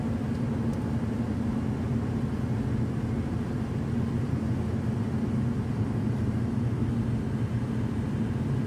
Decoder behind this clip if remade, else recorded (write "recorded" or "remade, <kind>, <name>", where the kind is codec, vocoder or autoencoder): recorded